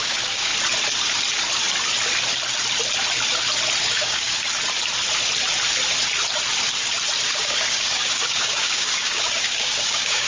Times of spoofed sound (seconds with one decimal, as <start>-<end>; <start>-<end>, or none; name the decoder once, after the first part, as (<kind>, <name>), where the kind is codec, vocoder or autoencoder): 0.0-0.5 (codec, DAC); 3.8-4.5; 7.3-10.3